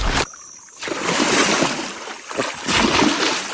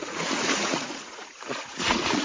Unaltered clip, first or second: first